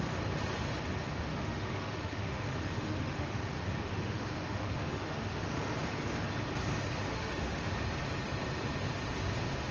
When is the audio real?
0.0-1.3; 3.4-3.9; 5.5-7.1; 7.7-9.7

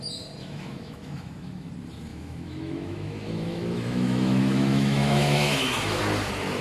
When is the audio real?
0.0-0.4; 1.7-2.1; 6.0-6.6

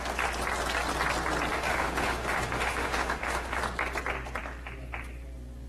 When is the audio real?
0.0-1.5; 3.6-5.7

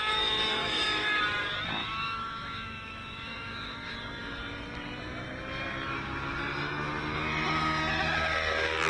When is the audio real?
0.0-0.6; 1.2-1.8; 4.0-8.9

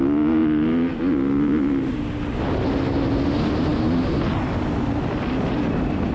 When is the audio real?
0.0-6.1

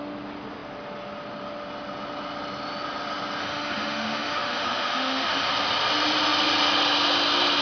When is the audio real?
0.0-3.4; 5.5-7.6

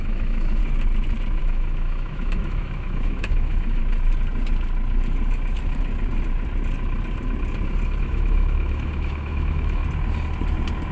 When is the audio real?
0.6-1.4; 3.8-8.0; 9.8-10.9